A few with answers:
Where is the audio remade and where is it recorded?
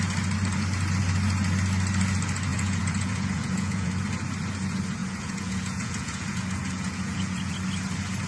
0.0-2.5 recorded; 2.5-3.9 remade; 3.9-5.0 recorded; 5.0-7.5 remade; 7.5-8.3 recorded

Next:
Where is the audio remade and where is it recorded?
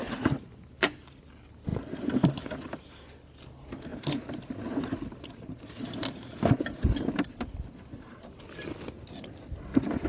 0.0-3.9 recorded; 3.9-8.4 remade; 8.4-10.1 recorded